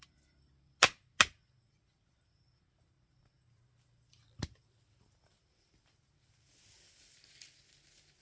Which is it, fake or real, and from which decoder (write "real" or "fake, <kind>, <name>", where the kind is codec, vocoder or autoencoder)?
real